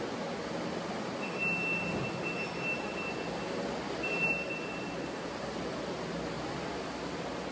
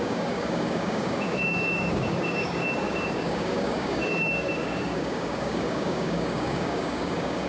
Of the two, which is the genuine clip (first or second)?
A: first